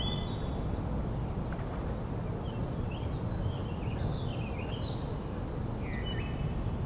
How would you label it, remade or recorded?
recorded